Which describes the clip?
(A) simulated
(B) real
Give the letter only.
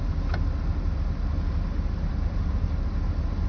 B